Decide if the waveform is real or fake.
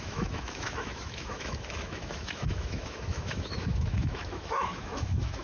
fake